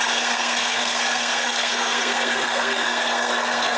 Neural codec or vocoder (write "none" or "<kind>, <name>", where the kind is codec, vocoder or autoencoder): codec, SNAC